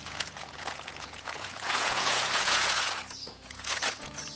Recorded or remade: remade